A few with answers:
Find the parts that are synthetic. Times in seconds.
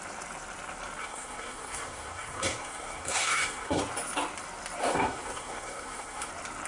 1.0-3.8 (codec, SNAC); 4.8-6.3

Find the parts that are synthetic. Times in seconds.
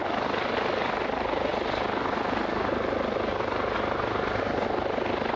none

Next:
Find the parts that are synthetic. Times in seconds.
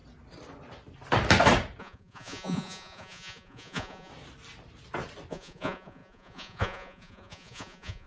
1.8-4.1 (vocoder, Vocos); 5.3-8.1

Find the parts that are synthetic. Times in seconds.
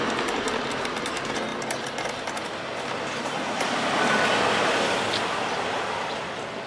none